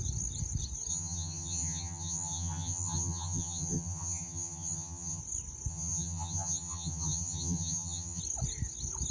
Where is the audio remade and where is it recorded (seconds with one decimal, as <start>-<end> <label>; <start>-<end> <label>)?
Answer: 0.0-0.9 recorded; 0.9-5.2 remade; 5.2-5.7 recorded; 5.7-8.2 remade; 8.2-9.1 recorded

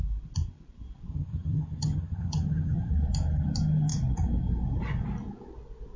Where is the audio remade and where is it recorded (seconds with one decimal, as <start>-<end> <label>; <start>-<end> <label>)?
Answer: 0.0-1.1 recorded; 1.1-2.9 remade; 2.9-6.0 recorded

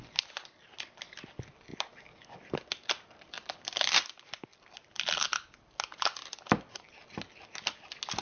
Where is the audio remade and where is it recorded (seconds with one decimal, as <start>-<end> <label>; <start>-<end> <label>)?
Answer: 0.0-8.2 recorded

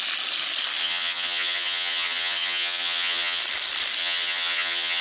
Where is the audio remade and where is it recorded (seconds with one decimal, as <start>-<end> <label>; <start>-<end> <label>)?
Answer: 0.0-0.8 recorded; 0.8-3.4 remade; 3.4-4.0 recorded; 4.0-5.0 remade

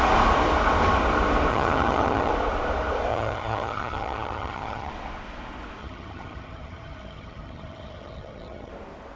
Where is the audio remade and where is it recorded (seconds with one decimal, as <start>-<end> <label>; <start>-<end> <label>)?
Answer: 0.0-1.5 recorded; 1.5-2.3 remade; 2.3-3.1 recorded; 3.1-4.9 remade; 4.9-5.8 recorded; 5.8-8.7 remade; 8.7-9.2 recorded

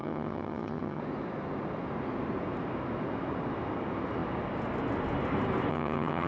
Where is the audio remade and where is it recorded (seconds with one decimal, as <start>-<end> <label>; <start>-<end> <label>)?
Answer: 0.0-1.0 remade; 1.0-5.7 recorded; 5.7-6.3 remade

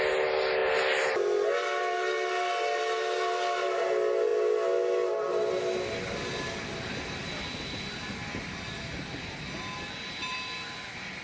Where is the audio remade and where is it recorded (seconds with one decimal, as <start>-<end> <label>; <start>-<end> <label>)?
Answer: 0.0-11.2 recorded